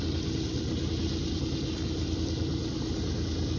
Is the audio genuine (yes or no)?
yes